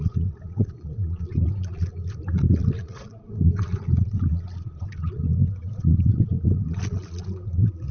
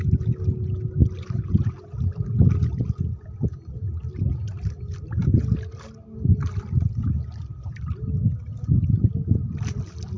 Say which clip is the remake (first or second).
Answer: first